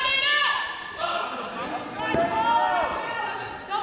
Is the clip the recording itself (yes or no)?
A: yes